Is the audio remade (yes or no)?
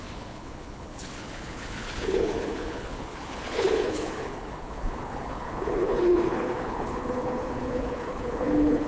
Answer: yes